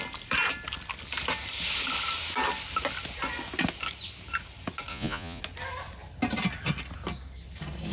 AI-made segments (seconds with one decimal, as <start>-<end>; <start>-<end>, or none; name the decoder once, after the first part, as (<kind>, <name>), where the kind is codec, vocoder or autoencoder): 4.9-5.4 (vocoder, Vocos)

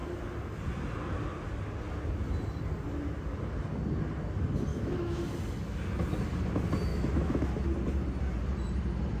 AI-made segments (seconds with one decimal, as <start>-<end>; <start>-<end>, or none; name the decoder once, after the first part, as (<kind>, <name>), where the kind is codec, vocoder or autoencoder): 4.7-5.2 (autoencoder, DAC-VAE); 6.9-7.5

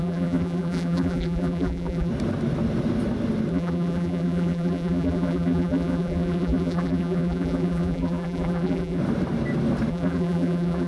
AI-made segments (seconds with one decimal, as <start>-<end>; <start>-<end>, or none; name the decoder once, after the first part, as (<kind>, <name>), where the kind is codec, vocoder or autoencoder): 0.0-2.1 (vocoder, BigVGAN v2); 3.5-9.0; 9.9-10.9

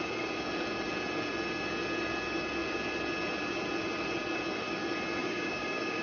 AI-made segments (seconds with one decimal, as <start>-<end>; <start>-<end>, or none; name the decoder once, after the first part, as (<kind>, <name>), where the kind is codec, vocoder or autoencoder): 5.2-6.0 (codec, DAC)

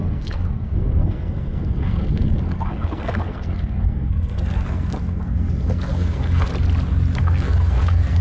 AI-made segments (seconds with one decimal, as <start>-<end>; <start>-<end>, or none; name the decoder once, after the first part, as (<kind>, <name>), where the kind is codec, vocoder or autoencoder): 0.0-6.5 (codec, SNAC); 7.2-8.2